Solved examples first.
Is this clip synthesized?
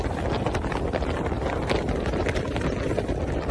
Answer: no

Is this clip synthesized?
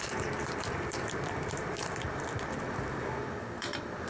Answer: yes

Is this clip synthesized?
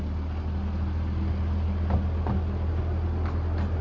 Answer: no